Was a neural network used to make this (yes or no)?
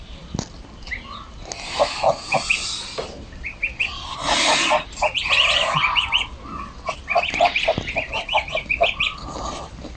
no